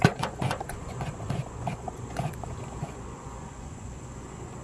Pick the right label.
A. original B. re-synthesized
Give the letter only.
B